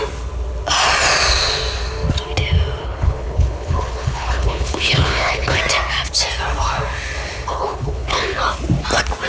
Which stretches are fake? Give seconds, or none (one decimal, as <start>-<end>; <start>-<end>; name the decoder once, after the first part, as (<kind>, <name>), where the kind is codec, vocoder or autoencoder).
2.8-5.6 (codec, HILCodec); 7.5-8.4